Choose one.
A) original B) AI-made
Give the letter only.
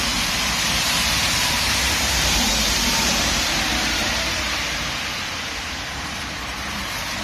B